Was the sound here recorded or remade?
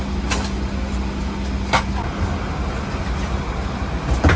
recorded